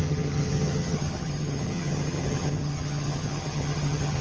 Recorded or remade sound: remade